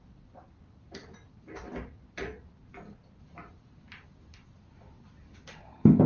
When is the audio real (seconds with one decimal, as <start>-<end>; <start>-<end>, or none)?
1.2-4.9

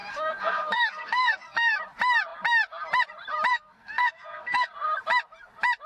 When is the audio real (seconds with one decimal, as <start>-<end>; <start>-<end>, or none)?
1.8-3.5; 4.7-5.9

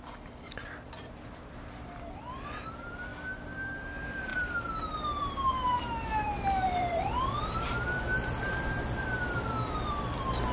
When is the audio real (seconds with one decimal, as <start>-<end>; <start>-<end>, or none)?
3.1-3.8